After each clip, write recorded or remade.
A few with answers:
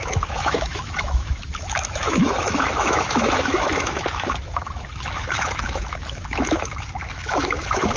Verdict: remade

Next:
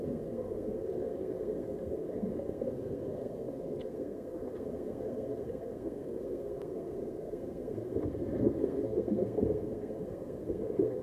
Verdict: remade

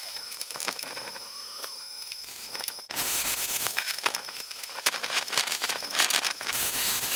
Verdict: remade